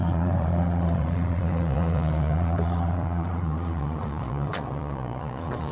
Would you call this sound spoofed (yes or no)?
yes